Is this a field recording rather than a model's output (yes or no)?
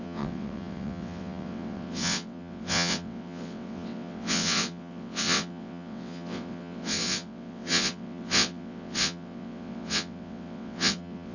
no